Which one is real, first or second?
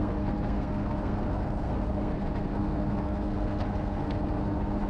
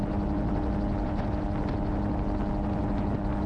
second